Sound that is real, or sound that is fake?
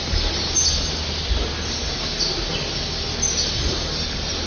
real